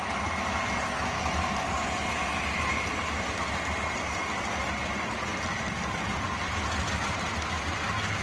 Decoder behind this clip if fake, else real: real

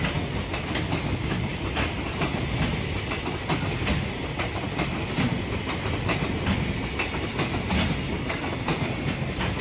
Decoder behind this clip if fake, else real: real